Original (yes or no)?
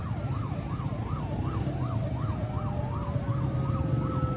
yes